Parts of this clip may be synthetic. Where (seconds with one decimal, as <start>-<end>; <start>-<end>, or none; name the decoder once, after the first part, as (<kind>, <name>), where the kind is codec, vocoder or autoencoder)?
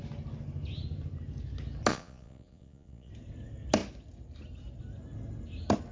1.9-3.1 (vocoder, Vocos)